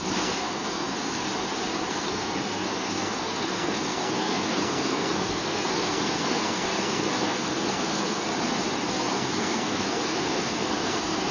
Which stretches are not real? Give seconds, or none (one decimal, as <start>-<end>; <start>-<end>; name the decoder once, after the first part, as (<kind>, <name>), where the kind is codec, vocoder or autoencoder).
0.0-1.2 (codec, SNAC); 1.9-8.3; 8.9-11.3